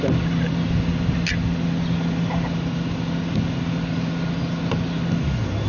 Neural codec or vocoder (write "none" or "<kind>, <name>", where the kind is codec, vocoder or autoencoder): none